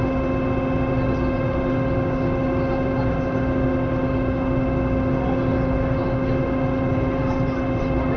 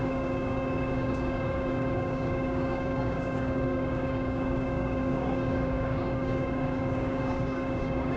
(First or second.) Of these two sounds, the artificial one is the second